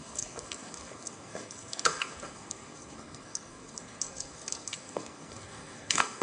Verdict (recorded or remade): remade